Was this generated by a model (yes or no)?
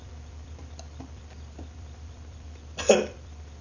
yes